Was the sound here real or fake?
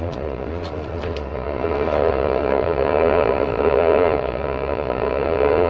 fake